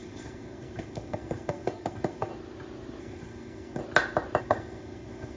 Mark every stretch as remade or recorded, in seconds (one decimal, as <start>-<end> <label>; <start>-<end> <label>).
0.0-2.3 remade; 2.3-3.0 recorded; 3.0-3.8 remade; 3.8-4.4 recorded; 4.4-5.4 remade